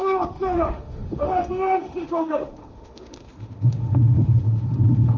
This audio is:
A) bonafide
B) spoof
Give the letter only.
B